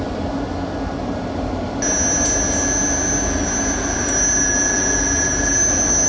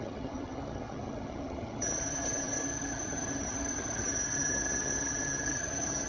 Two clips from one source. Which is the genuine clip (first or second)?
first